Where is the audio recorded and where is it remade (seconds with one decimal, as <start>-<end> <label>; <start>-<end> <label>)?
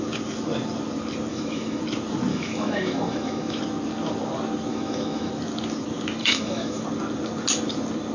0.0-1.3 recorded; 1.3-1.8 remade; 1.8-2.3 recorded; 2.3-3.6 remade; 3.6-4.7 recorded; 4.7-5.3 remade; 5.3-6.2 recorded; 6.2-6.8 remade; 6.8-8.1 recorded